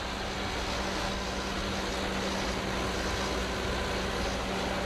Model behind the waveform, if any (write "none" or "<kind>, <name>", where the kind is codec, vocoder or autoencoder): none